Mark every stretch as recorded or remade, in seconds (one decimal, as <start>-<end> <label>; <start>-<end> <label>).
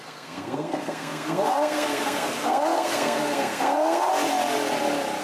0.0-4.1 remade; 4.1-5.2 recorded